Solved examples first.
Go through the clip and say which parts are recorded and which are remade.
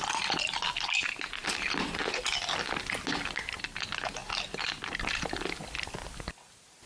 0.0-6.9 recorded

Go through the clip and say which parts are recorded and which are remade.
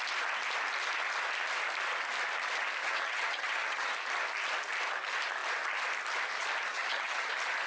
0.0-2.8 recorded; 2.8-3.9 remade; 3.9-6.7 recorded; 6.7-7.3 remade; 7.3-7.7 recorded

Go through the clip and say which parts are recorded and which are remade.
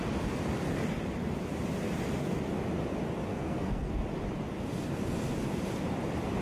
0.0-3.3 recorded; 3.3-4.0 remade; 4.0-6.4 recorded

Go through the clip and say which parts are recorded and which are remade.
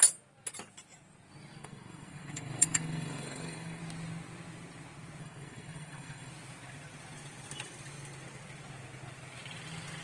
0.0-1.6 recorded; 1.6-3.8 remade; 3.8-5.2 recorded; 5.2-6.3 remade; 6.3-10.0 recorded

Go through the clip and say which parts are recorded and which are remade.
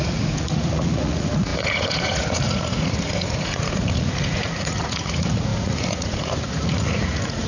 0.0-7.5 remade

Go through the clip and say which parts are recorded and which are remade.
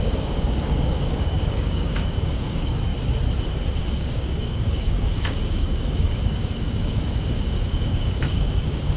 0.0-2.9 remade; 2.9-3.7 recorded; 3.7-9.0 remade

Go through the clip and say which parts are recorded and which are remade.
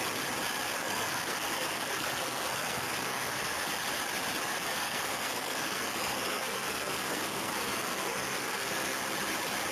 0.0-0.8 recorded; 0.8-3.7 remade; 3.7-4.5 recorded; 4.5-9.0 remade; 9.0-9.7 recorded